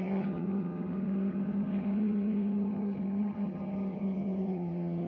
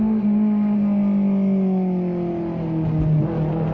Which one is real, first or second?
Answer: second